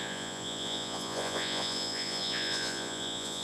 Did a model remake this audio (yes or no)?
yes